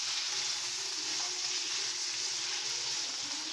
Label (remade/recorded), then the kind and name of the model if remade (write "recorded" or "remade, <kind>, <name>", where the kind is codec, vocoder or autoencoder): recorded